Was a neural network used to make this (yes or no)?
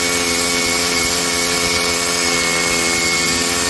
no